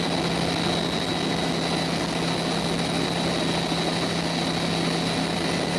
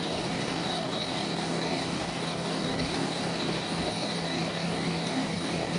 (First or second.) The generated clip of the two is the second